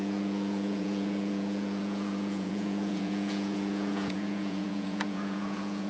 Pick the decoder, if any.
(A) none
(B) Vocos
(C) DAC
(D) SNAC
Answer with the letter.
B